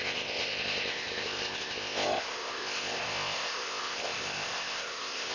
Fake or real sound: fake